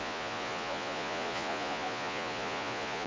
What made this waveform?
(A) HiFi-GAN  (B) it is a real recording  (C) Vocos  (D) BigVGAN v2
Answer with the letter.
C